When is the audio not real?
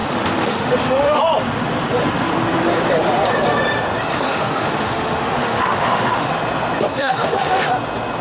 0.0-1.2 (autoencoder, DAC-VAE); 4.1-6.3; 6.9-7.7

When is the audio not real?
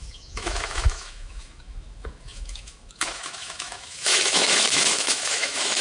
0.0-5.8 (autoencoder, DAC-VAE)